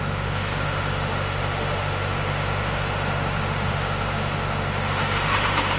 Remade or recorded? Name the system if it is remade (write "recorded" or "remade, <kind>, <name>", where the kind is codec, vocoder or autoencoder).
remade, autoencoder, DAC-VAE